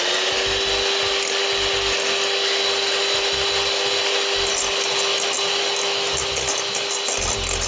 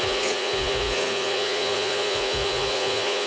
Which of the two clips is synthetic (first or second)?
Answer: second